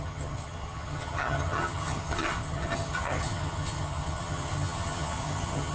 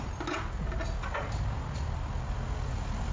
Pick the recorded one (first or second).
second